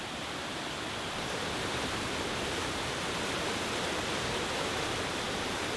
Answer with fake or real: real